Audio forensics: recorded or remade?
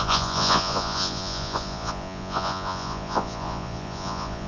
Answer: remade